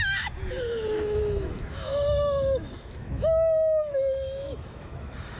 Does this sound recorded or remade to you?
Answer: remade